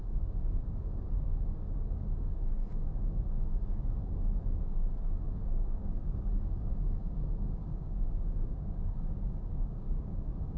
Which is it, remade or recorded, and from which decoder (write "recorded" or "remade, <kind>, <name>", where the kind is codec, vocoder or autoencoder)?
remade, codec, DAC